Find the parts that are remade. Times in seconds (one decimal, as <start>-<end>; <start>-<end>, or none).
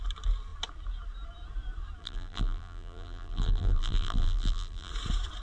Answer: 2.0-4.9